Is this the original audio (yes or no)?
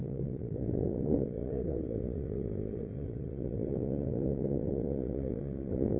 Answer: no